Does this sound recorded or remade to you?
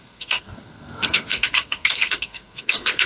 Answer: remade